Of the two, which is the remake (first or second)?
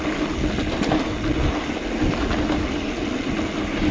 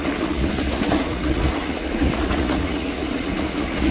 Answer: second